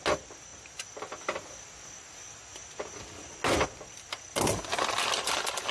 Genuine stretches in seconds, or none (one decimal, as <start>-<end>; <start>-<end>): 0.0-4.7